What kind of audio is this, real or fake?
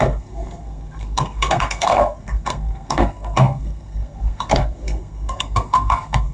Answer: fake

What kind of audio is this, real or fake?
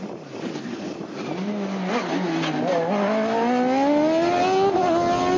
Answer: real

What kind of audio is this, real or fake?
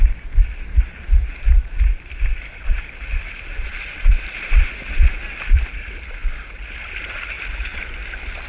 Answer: real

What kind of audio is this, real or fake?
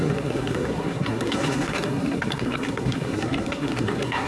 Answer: fake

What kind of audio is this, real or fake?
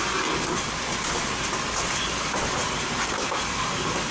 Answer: real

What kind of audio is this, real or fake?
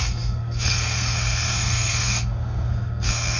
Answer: fake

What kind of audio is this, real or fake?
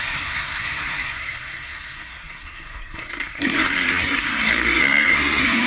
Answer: fake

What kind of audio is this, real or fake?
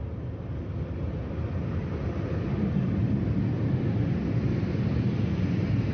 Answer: real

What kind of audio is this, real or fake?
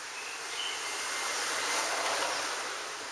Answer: real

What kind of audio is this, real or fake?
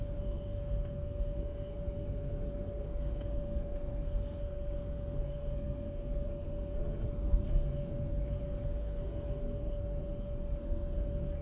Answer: fake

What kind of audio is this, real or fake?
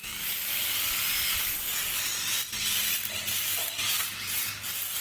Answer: real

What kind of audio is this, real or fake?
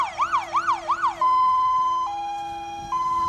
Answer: real